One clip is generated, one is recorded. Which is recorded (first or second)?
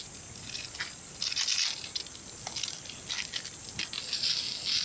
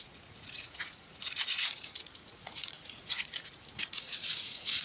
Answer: first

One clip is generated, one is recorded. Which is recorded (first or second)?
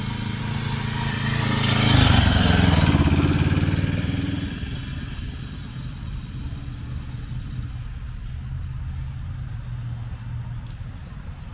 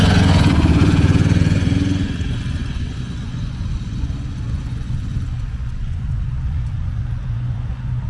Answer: first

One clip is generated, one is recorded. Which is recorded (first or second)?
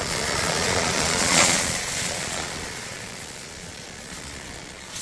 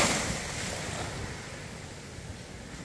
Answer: second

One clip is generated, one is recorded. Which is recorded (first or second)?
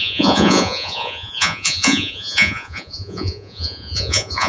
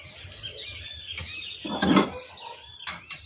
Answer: second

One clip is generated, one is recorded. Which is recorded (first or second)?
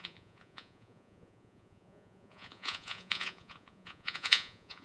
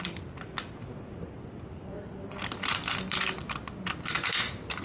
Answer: second